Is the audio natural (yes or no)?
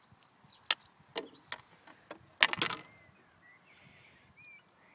yes